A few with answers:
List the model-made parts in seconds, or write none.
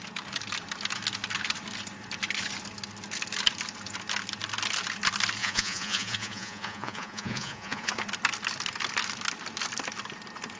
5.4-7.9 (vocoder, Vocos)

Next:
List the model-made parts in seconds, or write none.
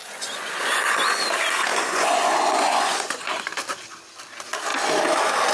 0.0-1.2 (vocoder, Vocos); 1.7-3.5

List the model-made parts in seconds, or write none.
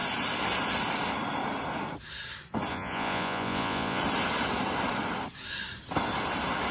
2.7-4.0 (vocoder, Vocos)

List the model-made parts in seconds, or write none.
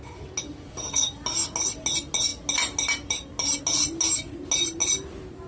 none